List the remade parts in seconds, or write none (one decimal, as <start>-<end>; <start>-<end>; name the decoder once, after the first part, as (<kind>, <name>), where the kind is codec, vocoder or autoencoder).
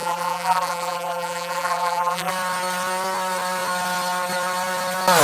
0.0-2.3 (vocoder, BigVGAN v2)